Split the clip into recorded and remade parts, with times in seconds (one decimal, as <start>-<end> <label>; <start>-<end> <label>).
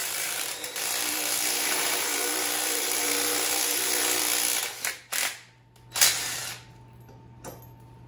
0.0-4.2 remade; 4.2-8.1 recorded